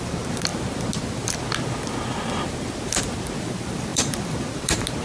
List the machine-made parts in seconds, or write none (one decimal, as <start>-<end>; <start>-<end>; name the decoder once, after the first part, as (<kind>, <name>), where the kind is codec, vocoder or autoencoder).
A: 0.0-0.5 (vocoder, BigVGAN v2); 3.5-5.0